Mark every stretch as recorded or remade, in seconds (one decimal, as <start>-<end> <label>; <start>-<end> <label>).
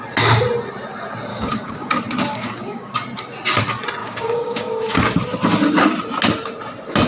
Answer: 0.0-1.3 recorded; 1.3-1.9 remade; 1.9-2.3 recorded; 2.3-2.9 remade; 2.9-4.0 recorded; 4.0-5.0 remade; 5.0-7.1 recorded